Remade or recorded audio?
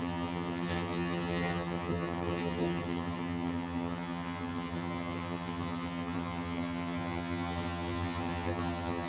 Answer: remade